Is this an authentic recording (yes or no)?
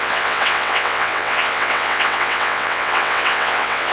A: no